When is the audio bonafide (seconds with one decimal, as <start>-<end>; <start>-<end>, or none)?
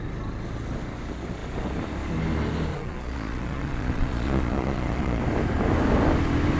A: 0.0-2.7; 5.2-6.6